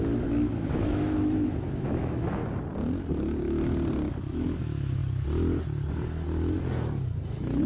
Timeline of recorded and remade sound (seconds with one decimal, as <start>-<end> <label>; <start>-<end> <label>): 0.0-2.4 remade; 2.4-4.3 recorded; 4.3-5.0 remade; 5.0-7.3 recorded; 7.3-7.7 remade